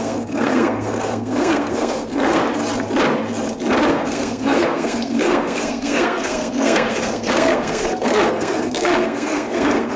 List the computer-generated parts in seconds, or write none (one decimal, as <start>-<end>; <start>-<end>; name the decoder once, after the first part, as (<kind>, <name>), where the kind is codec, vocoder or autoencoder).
0.0-2.4 (codec, SNAC); 3.9-10.0